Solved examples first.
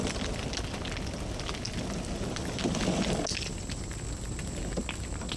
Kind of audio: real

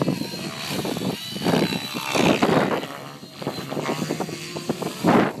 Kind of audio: fake